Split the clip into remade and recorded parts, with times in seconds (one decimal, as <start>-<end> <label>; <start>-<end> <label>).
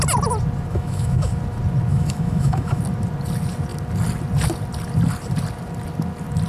0.0-0.7 recorded; 0.7-1.3 remade; 1.3-1.9 recorded; 1.9-2.8 remade; 2.8-6.5 recorded